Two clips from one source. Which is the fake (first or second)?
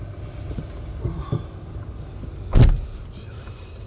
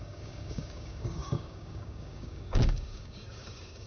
second